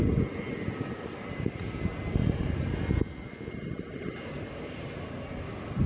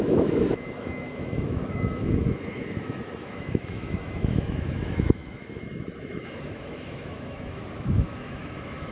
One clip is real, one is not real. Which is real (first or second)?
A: first